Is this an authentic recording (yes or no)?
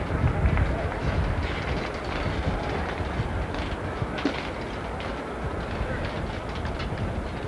yes